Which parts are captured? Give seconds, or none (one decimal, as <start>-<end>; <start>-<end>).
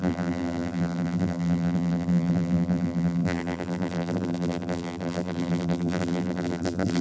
none